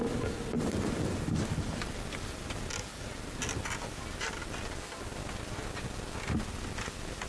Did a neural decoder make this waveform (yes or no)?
no